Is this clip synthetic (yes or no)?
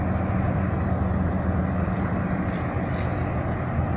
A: no